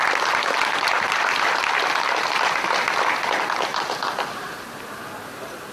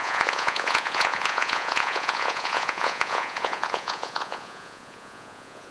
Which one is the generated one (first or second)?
second